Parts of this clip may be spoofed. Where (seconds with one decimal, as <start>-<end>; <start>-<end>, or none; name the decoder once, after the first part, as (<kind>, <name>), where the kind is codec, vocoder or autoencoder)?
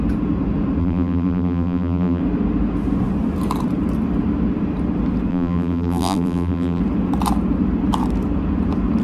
0.8-2.2 (vocoder, BigVGAN v2); 5.3-6.8